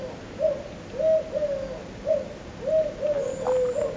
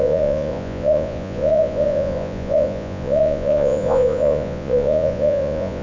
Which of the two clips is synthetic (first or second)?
second